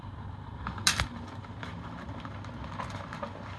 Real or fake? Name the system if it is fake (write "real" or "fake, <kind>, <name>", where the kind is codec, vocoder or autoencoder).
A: real